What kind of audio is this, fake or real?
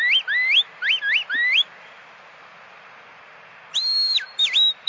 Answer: real